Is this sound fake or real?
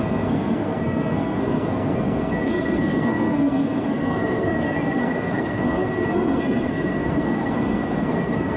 fake